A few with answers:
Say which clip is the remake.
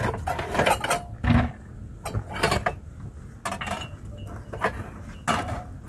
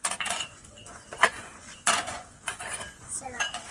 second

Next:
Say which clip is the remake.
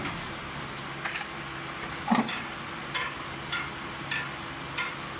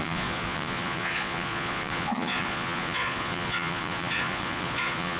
second